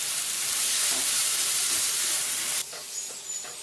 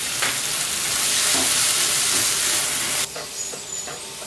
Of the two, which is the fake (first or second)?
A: first